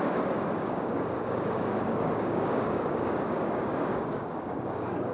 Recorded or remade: remade